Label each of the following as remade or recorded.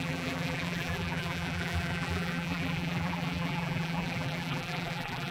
remade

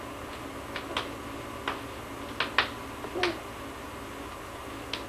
recorded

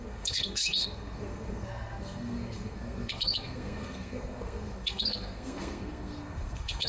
remade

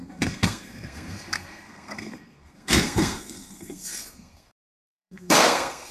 remade